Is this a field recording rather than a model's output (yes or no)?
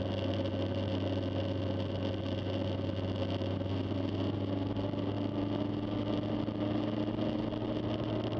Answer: yes